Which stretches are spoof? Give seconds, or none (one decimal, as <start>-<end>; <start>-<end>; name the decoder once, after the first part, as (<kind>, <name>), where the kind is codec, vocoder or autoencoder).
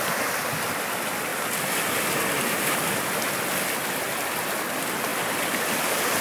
none